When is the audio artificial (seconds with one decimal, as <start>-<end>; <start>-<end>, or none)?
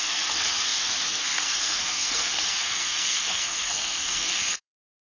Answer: 0.0-5.0